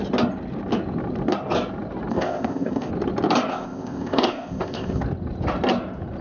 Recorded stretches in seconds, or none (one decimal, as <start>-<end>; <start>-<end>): 0.0-2.1; 2.9-3.5; 5.0-6.2